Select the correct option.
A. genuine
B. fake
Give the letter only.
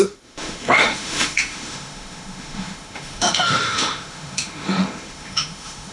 B